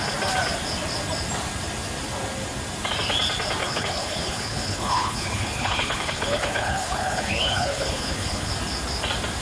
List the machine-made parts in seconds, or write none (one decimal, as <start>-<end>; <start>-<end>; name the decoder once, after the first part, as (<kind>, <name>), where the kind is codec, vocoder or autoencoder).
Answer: 3.6-8.5 (codec, HILCodec)